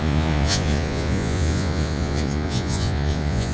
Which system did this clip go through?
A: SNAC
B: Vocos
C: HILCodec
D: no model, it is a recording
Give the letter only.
B